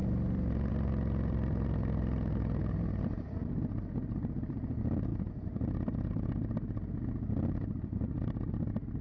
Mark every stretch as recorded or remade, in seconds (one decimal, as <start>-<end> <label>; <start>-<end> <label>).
0.0-5.1 remade; 5.1-9.0 recorded